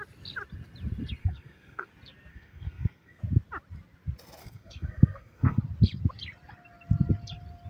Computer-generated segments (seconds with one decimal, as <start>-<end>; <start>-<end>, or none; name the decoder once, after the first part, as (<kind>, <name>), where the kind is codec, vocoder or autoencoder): 1.2-1.9 (codec, SNAC); 2.3-3.2; 4.4-5.6